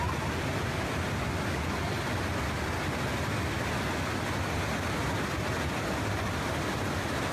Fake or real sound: real